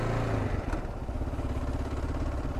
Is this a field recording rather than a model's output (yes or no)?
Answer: yes